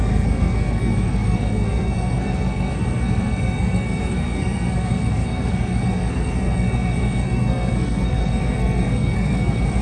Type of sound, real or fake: fake